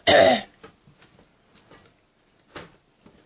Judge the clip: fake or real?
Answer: real